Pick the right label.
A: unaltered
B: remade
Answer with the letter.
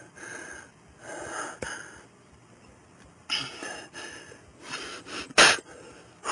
A